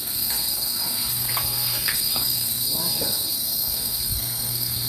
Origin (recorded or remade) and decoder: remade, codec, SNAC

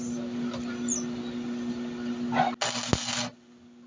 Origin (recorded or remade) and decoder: recorded